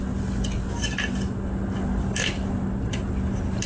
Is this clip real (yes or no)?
yes